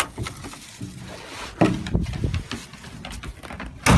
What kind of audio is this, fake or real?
real